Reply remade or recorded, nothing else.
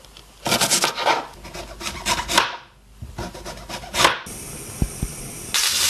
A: recorded